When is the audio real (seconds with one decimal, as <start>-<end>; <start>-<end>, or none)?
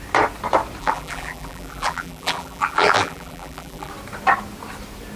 0.0-0.8; 3.9-5.2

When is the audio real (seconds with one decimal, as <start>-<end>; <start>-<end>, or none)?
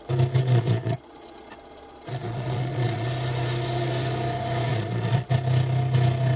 0.0-0.4; 3.1-4.7; 5.3-6.4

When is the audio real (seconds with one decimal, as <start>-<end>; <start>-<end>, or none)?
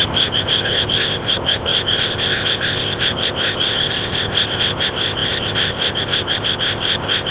none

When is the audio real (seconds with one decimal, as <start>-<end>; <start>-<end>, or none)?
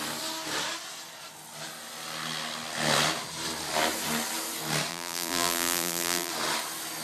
0.0-4.9; 6.3-7.0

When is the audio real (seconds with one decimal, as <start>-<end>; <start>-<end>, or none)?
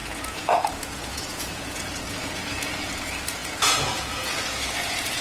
none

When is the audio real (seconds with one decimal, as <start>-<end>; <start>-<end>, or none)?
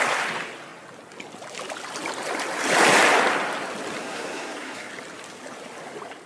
0.0-4.0; 4.9-6.3